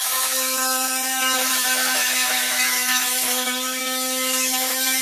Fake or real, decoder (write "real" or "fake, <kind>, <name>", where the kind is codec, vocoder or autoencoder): fake, autoencoder, DAC-VAE